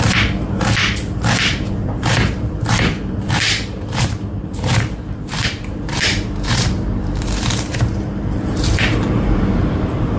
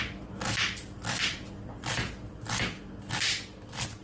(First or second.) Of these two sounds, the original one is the second